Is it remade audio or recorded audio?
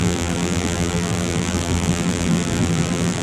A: remade